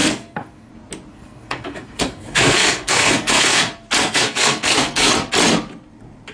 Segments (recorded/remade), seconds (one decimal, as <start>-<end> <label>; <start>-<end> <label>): 0.0-0.7 remade; 0.7-1.1 recorded; 1.1-3.6 remade; 3.6-4.0 recorded; 4.0-5.1 remade; 5.1-6.3 recorded